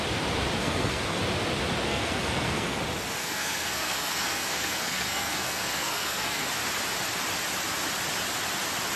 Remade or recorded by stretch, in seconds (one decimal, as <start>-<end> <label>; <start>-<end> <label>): 0.0-0.6 recorded; 0.6-1.2 remade; 1.2-1.9 recorded; 1.9-2.8 remade; 2.8-3.2 recorded; 3.2-6.5 remade; 6.5-9.0 recorded